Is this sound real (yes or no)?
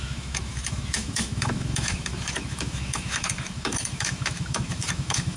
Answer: no